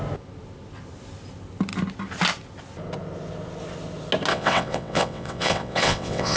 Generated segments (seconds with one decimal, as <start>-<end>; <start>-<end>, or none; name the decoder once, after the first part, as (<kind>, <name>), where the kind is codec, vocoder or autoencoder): 4.3-6.4 (vocoder, WaveNeXt)